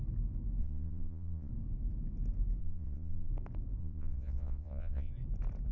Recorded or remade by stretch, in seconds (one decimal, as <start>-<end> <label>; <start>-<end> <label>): 0.0-0.6 recorded; 0.6-1.5 remade; 1.5-2.6 recorded; 2.6-3.3 remade; 3.3-3.8 recorded; 3.8-5.1 remade; 5.1-5.7 recorded